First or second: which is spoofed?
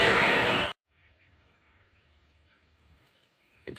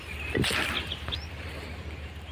first